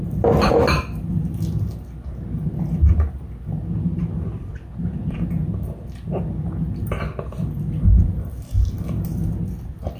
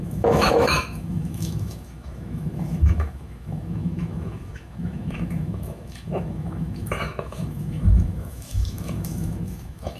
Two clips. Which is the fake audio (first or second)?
second